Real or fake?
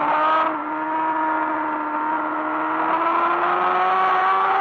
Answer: real